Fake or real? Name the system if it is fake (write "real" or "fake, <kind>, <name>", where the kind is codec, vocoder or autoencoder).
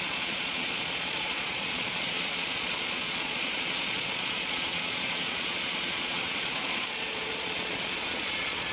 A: fake, vocoder, Vocos